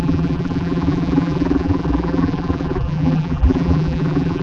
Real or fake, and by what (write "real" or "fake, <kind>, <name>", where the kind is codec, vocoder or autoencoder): fake, vocoder, BigVGAN v2